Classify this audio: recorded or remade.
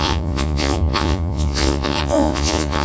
remade